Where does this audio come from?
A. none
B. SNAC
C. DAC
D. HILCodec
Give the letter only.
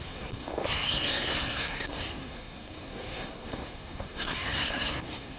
B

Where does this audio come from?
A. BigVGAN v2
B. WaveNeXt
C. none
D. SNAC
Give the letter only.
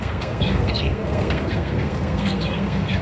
D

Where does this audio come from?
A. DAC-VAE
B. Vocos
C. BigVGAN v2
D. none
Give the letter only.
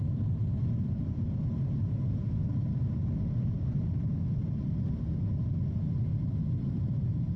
D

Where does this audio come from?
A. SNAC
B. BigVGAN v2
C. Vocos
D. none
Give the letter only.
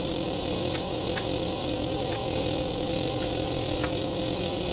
B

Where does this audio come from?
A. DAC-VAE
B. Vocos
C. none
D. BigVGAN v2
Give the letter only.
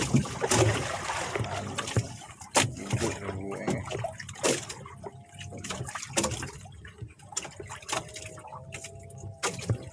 C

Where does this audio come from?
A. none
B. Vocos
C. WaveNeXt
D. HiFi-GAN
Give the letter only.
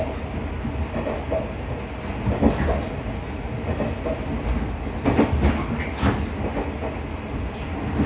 A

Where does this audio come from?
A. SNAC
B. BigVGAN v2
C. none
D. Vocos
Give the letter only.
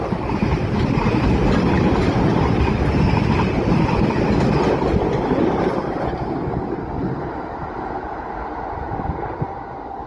C